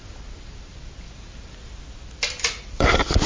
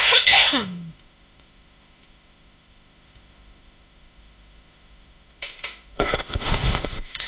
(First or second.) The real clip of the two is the first